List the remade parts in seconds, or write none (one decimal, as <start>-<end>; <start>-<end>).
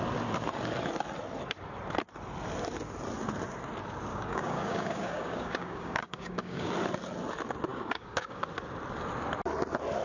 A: 4.1-6.7; 7.7-8.4